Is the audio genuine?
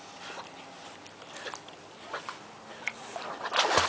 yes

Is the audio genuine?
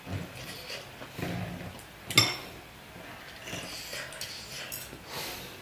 yes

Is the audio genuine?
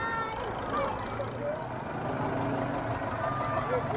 yes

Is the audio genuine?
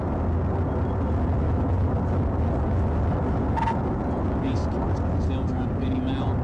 yes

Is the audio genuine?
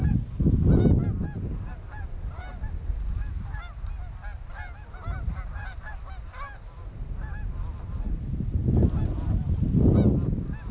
yes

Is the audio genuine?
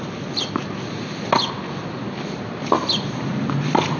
yes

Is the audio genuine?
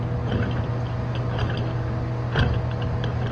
yes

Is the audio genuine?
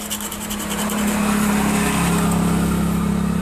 yes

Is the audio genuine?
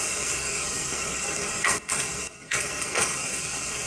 no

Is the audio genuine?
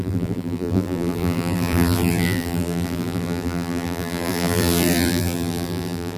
no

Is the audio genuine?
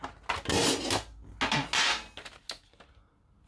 yes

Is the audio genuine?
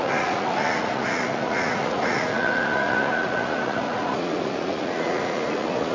no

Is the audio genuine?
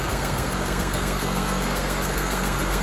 no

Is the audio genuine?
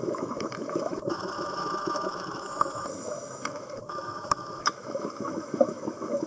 no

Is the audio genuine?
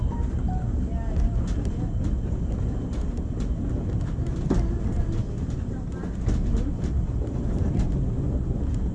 yes